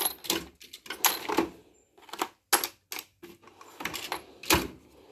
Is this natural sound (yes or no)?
yes